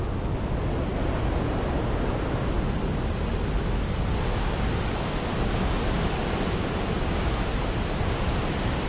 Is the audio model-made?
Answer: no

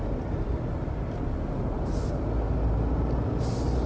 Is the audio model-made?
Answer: no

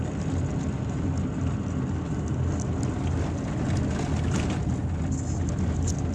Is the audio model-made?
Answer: no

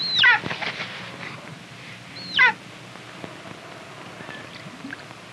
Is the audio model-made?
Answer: no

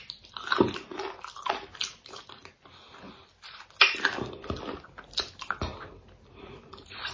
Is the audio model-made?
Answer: no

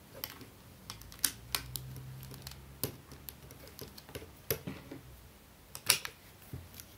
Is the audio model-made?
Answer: no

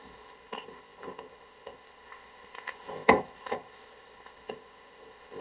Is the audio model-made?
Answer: yes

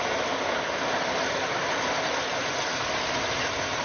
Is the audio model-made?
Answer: no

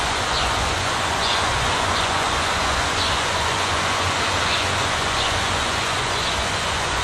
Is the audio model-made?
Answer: yes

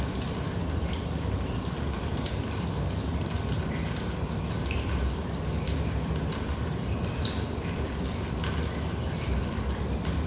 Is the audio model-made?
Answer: yes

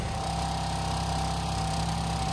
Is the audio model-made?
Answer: yes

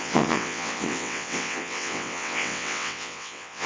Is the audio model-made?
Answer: yes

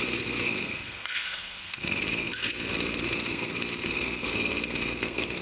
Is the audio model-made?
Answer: yes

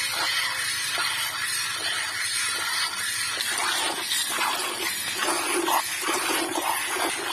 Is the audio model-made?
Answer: no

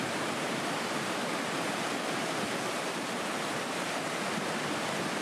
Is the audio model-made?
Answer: no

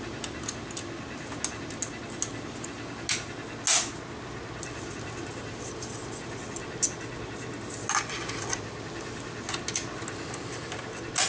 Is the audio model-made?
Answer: no